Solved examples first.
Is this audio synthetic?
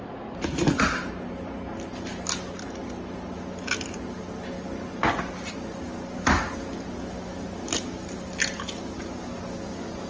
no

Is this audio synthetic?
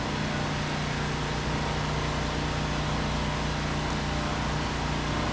no